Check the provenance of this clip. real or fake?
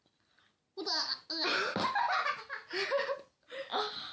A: real